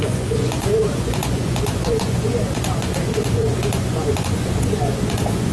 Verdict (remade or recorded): remade